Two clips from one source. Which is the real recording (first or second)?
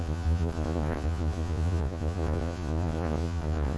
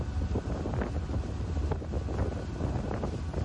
second